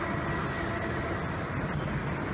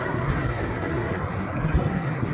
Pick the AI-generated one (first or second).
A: second